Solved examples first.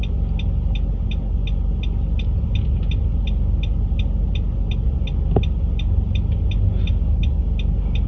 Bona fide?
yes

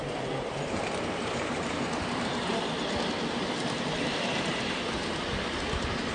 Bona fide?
no